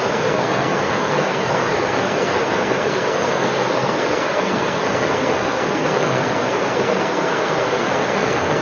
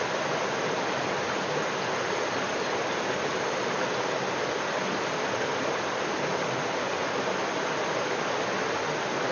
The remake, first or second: first